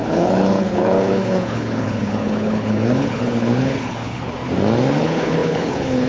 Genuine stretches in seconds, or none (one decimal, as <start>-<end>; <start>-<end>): 4.4-5.0